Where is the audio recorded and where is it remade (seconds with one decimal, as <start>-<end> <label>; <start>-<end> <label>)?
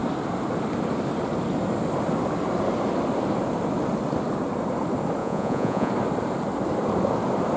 0.0-5.2 recorded; 5.2-5.9 remade; 5.9-7.6 recorded